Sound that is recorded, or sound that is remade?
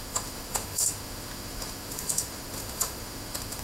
remade